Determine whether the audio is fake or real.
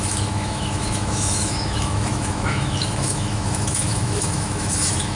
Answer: fake